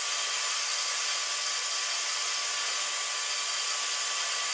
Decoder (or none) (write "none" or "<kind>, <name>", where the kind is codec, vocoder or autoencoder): none